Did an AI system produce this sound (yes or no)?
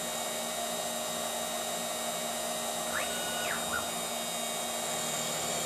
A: no